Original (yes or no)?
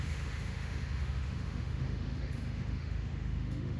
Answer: no